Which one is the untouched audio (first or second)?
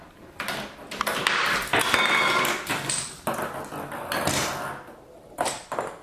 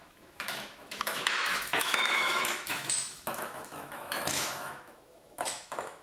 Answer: first